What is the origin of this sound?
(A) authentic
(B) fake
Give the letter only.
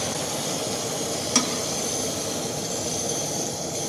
A